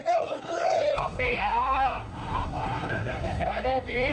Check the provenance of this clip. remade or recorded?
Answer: remade